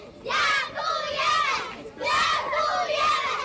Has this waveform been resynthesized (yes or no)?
no